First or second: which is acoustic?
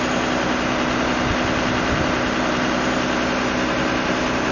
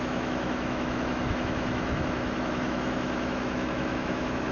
first